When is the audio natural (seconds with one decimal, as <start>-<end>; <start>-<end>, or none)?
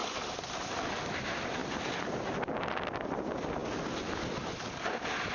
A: 0.0-5.3